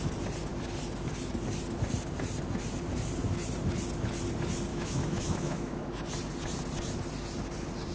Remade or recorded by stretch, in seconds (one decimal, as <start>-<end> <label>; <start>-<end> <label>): 0.0-4.7 recorded; 4.7-5.9 remade; 5.9-7.9 recorded